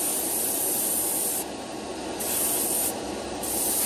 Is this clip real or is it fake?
real